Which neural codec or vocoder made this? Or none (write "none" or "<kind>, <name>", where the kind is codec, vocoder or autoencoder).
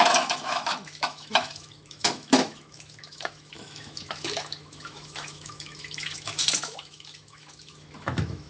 autoencoder, DAC-VAE